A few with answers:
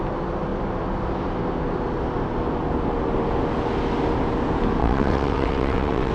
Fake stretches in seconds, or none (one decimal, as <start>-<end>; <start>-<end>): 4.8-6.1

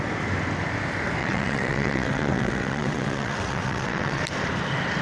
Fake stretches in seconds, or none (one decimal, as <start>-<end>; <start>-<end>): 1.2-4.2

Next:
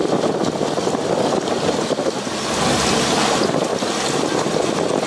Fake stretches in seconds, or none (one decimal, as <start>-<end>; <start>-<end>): none

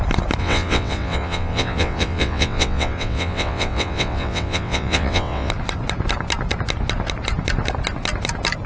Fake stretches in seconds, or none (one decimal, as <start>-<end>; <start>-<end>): 0.4-5.5

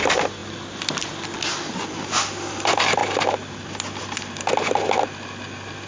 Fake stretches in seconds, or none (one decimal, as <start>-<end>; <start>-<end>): none

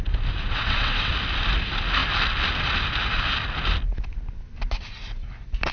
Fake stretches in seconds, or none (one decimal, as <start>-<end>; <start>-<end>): 0.4-1.1